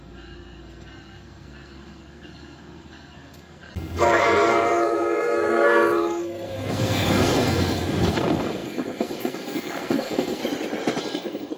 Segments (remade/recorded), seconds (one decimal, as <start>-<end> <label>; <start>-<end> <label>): 0.0-10.4 remade; 10.4-11.0 recorded; 11.0-11.6 remade